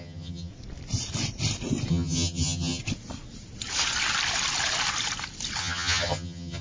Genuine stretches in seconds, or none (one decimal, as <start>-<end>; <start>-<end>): 0.5-1.9; 2.8-5.6